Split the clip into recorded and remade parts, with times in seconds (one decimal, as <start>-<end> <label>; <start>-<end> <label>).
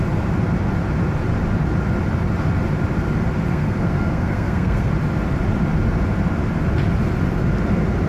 0.0-3.5 recorded; 3.5-4.9 remade; 4.9-8.1 recorded